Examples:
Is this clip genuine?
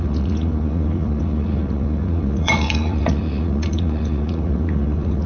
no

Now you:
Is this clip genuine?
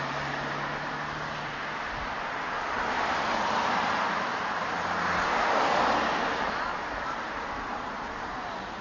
yes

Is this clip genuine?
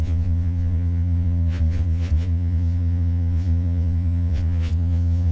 no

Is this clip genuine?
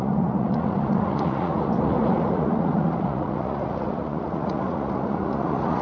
no